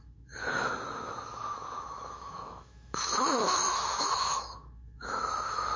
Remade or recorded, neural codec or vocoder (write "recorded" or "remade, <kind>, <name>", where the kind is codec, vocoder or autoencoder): remade, autoencoder, DAC-VAE